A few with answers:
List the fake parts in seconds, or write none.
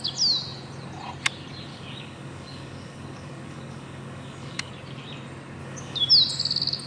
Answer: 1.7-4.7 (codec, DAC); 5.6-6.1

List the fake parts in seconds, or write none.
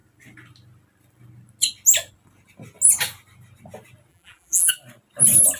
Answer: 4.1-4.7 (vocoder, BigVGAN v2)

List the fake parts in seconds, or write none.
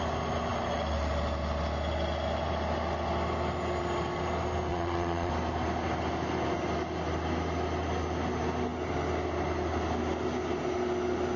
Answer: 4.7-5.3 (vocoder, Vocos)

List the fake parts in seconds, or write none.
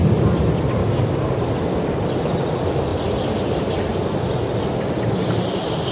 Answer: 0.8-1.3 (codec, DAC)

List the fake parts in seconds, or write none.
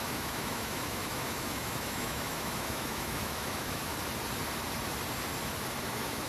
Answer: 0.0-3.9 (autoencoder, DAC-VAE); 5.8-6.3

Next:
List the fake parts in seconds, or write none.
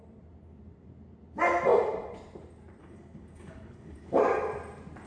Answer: 2.8-4.2 (codec, DAC)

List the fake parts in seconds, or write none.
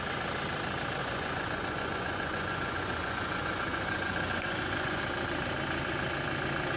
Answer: 1.0-5.0 (vocoder, Vocos)